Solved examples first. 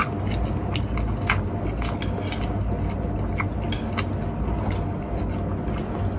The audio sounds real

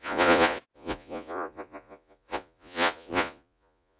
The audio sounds fake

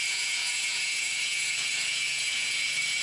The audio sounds fake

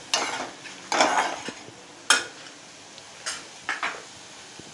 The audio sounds real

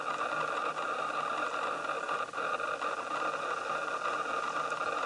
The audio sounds real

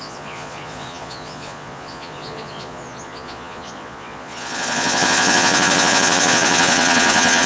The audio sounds fake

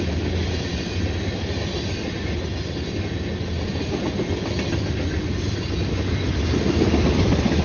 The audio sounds real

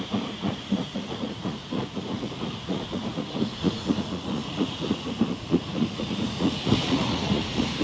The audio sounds fake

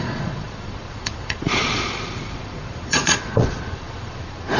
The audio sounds fake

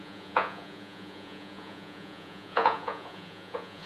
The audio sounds fake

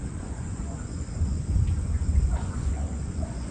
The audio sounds fake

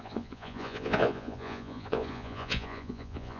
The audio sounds fake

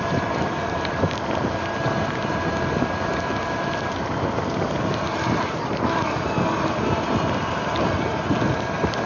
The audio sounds real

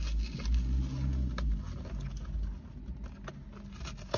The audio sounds real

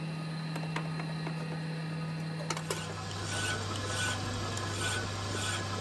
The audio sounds real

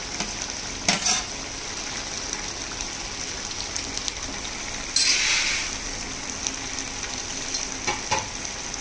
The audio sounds real